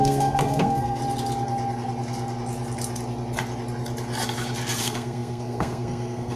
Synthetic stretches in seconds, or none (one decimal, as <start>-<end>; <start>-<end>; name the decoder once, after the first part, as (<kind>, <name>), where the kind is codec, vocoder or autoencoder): 0.0-1.0 (codec, SNAC); 4.8-6.4